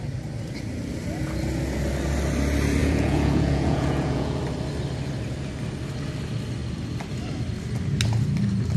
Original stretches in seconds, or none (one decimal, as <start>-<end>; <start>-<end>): 0.0-2.8; 4.4-8.8